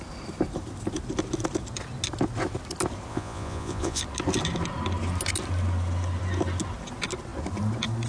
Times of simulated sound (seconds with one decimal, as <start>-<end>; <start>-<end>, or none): 3.1-4.0